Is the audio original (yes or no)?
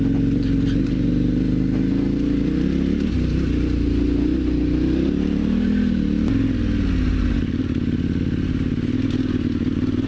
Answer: yes